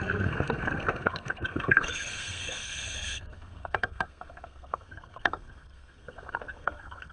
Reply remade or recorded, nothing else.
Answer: remade